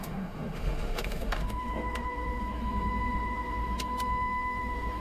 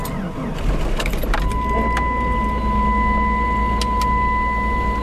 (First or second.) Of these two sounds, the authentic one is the second